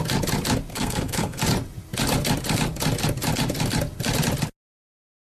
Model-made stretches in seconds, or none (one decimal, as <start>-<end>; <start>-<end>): 0.7-1.4